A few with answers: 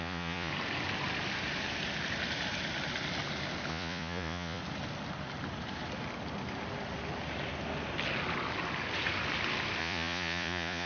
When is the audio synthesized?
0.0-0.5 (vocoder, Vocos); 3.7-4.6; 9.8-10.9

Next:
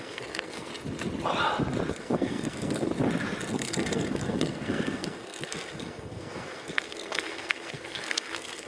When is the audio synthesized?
0.0-0.7 (codec, SNAC); 1.9-2.9; 3.5-8.7

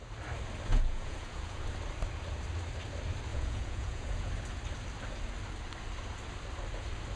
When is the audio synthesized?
0.7-1.6 (vocoder, Vocos); 3.3-4.3

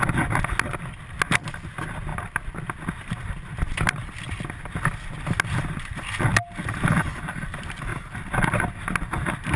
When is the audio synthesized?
none

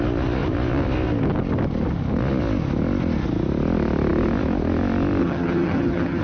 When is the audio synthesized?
5.2-6.2 (vocoder, HiFi-GAN)

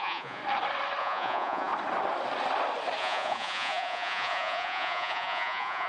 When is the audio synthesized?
0.0-0.4 (vocoder, Vocos); 1.0-1.7; 3.0-5.9

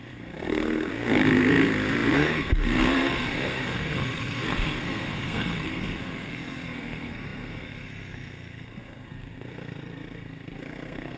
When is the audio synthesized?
0.0-11.2 (codec, SNAC)

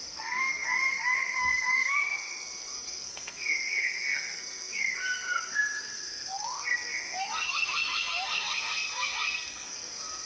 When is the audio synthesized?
0.0-10.3 (codec, SNAC)